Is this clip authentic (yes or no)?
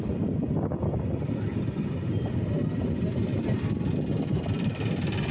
yes